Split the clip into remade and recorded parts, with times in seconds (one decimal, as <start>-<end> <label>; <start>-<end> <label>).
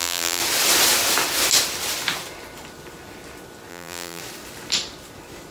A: 0.0-0.4 remade; 0.4-3.7 recorded; 3.7-4.2 remade; 4.2-5.5 recorded